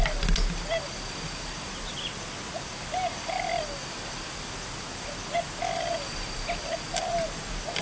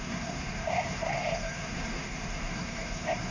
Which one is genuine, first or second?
first